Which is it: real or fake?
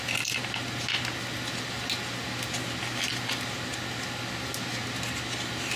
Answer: real